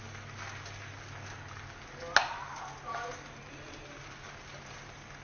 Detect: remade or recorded recorded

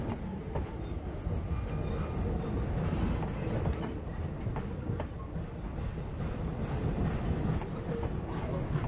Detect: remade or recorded recorded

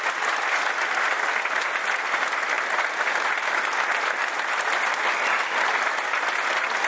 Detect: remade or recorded recorded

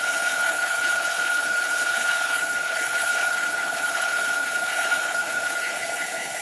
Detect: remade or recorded remade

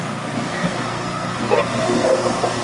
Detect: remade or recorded remade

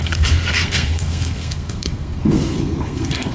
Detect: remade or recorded remade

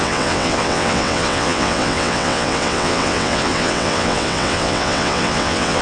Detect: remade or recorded remade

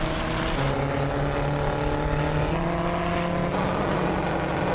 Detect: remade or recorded recorded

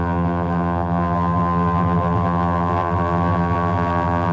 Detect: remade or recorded remade